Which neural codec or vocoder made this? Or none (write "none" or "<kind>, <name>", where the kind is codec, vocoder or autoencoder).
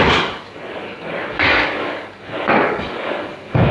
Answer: codec, DAC